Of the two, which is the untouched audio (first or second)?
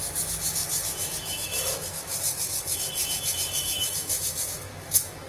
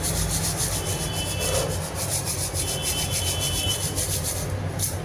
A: second